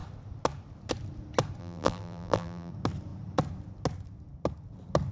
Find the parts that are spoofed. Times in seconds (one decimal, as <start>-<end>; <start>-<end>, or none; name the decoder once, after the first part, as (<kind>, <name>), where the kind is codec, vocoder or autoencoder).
1.6-2.7 (vocoder, BigVGAN v2)